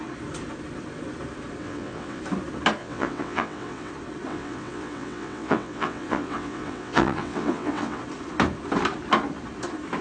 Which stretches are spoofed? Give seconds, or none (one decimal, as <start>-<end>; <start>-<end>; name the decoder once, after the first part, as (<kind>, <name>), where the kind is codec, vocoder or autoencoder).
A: 1.6-2.2 (vocoder, WaveNeXt); 2.8-3.9; 4.3-8.0